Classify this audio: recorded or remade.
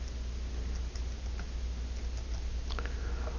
recorded